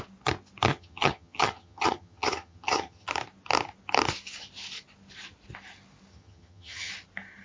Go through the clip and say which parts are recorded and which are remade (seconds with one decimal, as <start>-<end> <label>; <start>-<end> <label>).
0.0-0.7 recorded; 0.7-3.1 remade; 3.1-6.1 recorded; 6.1-6.9 remade; 6.9-7.4 recorded